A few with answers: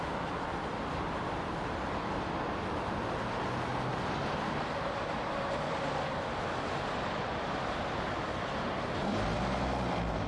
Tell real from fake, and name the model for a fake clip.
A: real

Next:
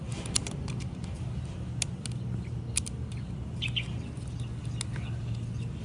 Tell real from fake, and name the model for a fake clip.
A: real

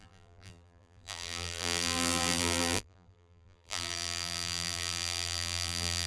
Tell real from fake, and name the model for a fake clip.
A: fake, vocoder, BigVGAN v2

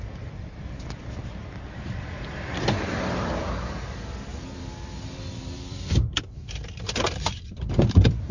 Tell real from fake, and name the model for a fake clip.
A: fake, vocoder, BigVGAN v2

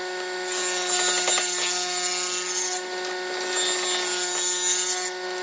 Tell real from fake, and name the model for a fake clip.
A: real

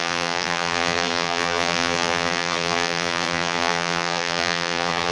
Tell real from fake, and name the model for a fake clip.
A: fake, vocoder, BigVGAN v2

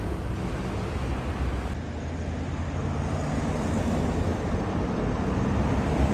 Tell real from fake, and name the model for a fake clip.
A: real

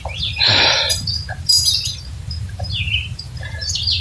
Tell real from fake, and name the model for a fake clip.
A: fake, vocoder, BigVGAN v2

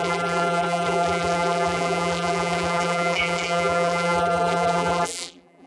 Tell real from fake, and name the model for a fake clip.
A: fake, vocoder, BigVGAN v2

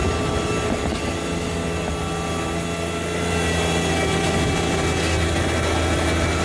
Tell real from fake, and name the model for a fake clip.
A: real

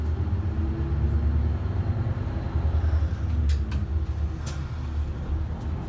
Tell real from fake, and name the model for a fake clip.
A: real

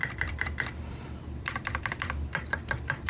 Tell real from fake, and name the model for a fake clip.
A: fake, vocoder, BigVGAN v2